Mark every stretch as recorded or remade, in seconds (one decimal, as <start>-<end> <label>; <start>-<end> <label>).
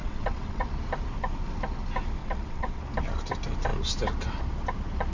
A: 0.0-0.7 remade; 0.7-2.2 recorded; 2.2-2.8 remade; 2.8-5.1 recorded